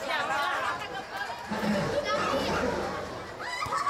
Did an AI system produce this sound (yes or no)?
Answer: no